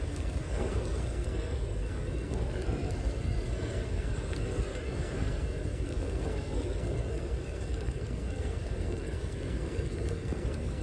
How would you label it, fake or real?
fake